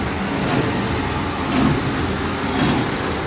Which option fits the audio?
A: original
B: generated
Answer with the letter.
A